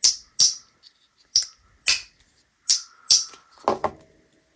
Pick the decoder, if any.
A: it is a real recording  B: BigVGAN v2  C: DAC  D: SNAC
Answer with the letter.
A